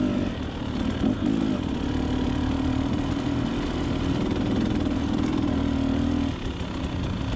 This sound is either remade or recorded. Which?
recorded